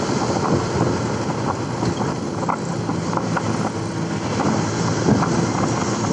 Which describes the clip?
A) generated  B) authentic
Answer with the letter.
B